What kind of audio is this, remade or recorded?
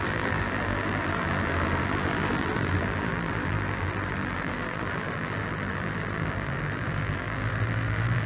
remade